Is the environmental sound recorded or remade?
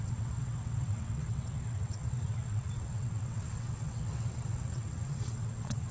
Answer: remade